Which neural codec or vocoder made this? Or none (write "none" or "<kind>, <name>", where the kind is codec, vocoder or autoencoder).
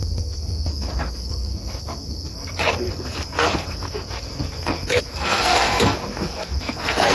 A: codec, SNAC